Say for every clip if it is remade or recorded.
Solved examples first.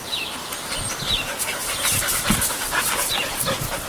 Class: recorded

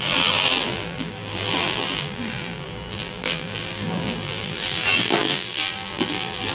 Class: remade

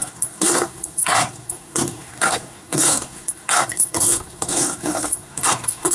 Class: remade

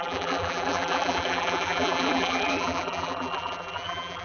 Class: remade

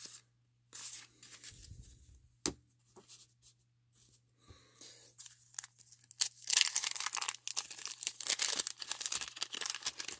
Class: recorded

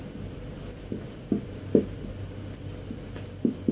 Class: recorded